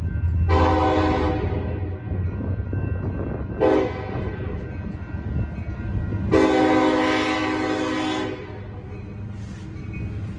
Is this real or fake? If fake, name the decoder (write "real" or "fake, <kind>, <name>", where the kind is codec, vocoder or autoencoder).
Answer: real